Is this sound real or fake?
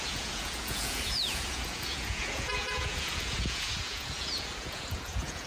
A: fake